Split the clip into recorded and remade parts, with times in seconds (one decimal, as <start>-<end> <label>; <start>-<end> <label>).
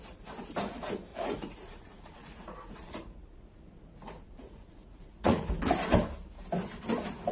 0.0-1.1 recorded; 1.1-5.5 remade; 5.5-7.3 recorded